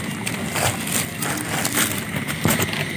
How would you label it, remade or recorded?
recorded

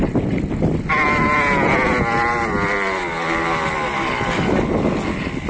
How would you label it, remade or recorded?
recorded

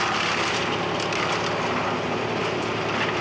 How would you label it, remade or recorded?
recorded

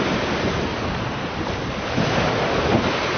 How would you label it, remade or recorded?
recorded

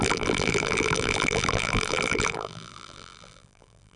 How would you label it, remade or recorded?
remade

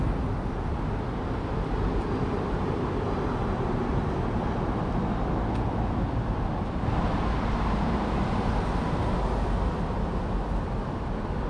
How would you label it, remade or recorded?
recorded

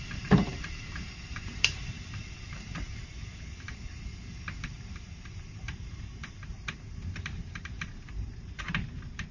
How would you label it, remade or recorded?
remade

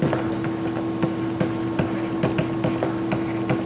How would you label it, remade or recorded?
recorded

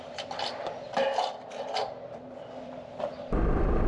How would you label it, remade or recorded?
remade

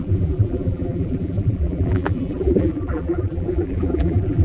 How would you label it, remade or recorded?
remade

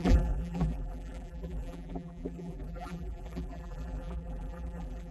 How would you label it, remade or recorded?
remade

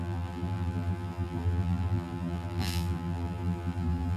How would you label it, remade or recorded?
remade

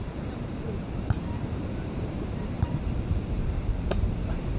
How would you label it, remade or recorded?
remade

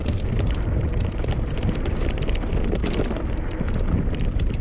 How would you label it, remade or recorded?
remade